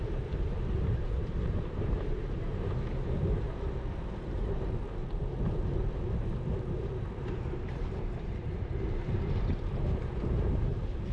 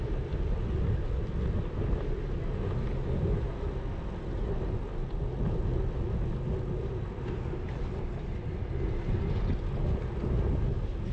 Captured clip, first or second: second